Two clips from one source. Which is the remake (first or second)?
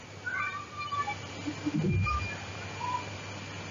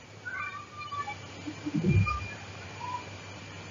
second